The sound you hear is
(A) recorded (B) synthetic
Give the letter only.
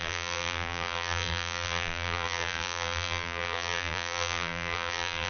B